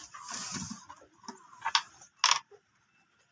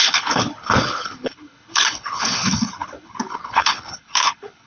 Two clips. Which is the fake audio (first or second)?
second